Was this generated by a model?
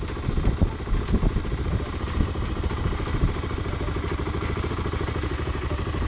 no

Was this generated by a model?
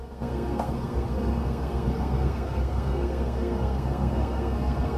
yes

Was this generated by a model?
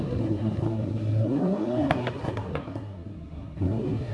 yes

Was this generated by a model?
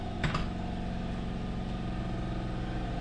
no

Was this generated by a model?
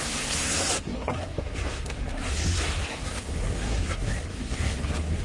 yes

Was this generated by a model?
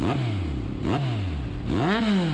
no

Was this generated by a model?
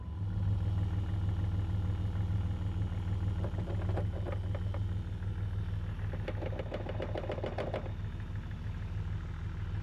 no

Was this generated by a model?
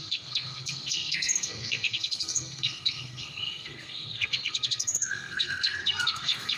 yes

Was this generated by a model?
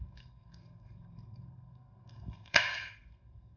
yes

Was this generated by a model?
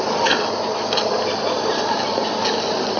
no